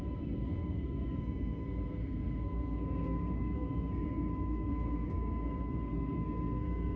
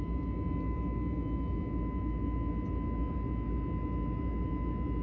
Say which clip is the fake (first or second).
first